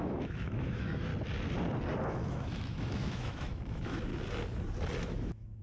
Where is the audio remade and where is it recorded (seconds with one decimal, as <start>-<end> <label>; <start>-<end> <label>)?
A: 0.0-1.1 remade; 1.1-2.1 recorded; 2.1-4.1 remade; 4.1-5.0 recorded; 5.0-5.6 remade